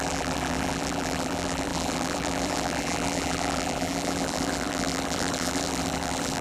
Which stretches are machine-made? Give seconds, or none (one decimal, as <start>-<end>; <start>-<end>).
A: 0.0-6.4

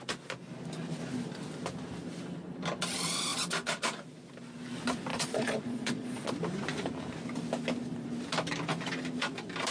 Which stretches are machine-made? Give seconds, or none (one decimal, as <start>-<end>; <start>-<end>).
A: 5.1-6.3

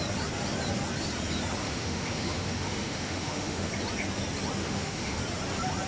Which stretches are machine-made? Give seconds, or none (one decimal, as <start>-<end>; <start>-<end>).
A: 1.6-3.7; 4.6-5.2

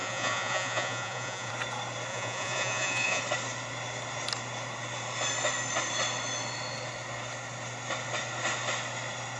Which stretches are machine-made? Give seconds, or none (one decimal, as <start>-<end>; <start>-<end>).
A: 0.0-1.5; 2.1-3.2

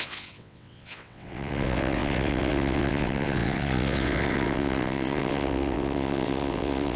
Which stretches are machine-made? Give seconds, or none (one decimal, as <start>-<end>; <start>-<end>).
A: 0.0-7.0